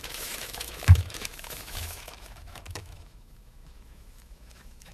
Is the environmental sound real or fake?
fake